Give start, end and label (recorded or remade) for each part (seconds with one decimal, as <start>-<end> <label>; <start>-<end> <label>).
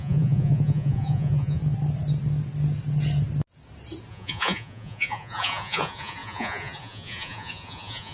0.0-1.6 remade; 1.6-4.1 recorded; 4.1-8.1 remade